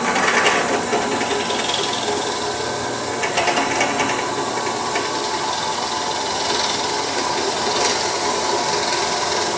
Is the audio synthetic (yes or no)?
no